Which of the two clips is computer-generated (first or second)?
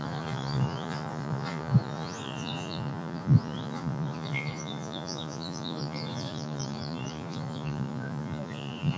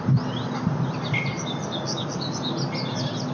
first